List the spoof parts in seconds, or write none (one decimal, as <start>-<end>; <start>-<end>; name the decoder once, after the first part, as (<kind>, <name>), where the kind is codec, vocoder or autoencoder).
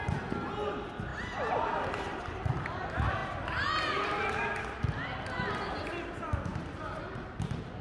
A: none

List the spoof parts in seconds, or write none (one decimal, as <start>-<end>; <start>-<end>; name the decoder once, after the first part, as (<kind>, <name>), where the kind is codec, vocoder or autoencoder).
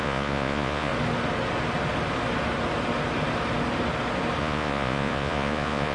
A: 0.0-0.9 (vocoder, Vocos); 4.4-5.9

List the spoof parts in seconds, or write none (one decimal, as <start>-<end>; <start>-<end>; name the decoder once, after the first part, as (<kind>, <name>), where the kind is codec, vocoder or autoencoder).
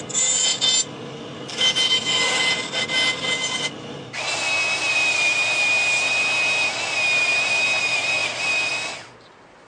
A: none